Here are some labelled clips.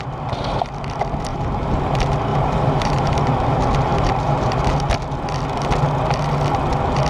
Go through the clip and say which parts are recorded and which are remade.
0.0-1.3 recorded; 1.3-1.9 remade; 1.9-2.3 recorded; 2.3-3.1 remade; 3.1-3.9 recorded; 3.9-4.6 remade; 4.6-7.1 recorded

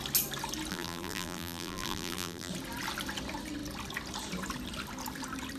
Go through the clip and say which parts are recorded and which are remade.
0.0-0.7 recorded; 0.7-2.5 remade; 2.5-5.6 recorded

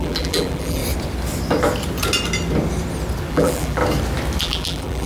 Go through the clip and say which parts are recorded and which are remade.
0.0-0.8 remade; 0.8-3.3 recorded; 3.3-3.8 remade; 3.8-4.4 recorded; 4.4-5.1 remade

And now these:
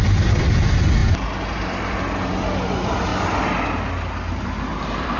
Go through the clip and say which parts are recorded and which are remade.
0.0-1.0 remade; 1.0-1.6 recorded; 1.6-3.1 remade; 3.1-4.3 recorded; 4.3-5.2 remade